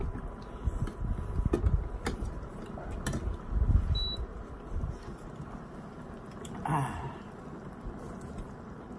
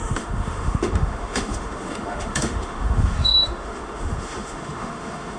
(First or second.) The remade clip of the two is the second